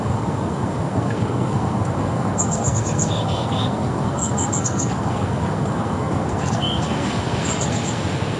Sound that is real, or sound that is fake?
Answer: fake